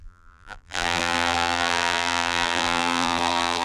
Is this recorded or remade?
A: remade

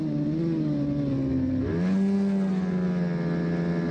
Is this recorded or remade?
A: recorded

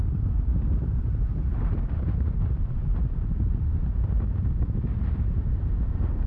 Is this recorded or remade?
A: remade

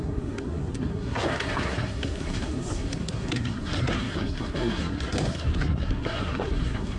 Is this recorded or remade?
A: remade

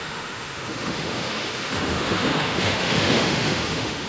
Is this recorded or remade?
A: remade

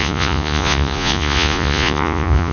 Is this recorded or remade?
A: remade